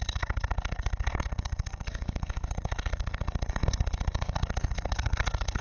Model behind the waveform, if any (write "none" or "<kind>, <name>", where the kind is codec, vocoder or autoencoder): codec, SNAC